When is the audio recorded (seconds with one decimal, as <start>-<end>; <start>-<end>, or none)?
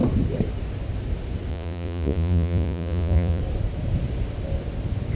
0.0-1.5; 3.4-5.2